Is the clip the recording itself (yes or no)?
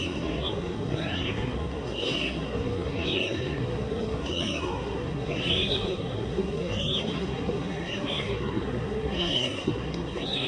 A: no